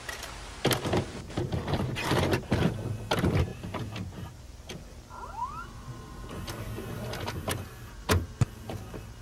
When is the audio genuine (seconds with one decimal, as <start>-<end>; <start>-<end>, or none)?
0.0-3.5; 4.4-9.2

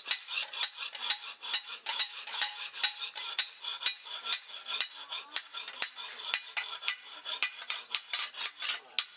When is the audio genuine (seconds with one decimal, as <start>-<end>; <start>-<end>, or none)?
0.0-1.7; 2.8-9.2